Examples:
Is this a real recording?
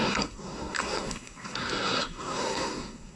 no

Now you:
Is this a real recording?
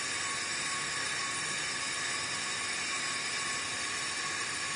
yes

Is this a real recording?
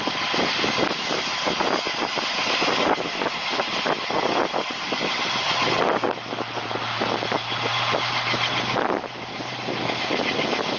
yes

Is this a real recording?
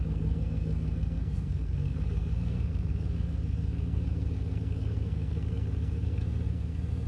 no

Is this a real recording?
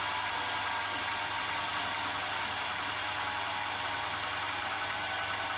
yes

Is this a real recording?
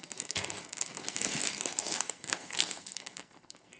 no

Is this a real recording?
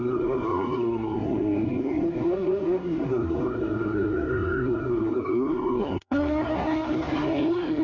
no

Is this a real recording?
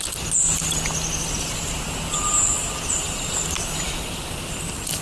yes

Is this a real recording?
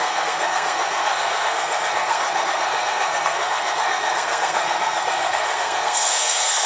no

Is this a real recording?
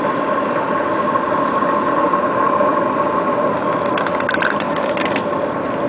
yes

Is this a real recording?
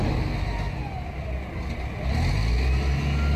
yes